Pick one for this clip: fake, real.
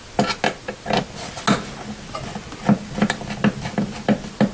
real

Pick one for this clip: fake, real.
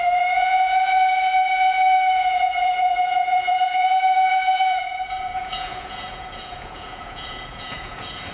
fake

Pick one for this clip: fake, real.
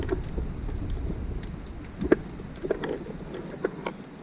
real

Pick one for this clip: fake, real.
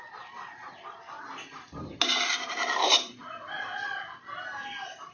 real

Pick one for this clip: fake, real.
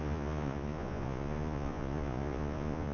fake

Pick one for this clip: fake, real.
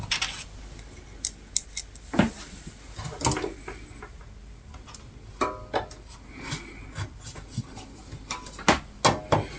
real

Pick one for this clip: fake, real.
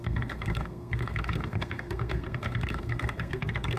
fake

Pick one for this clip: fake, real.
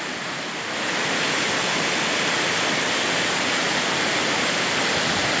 real